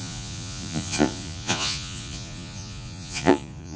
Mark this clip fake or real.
fake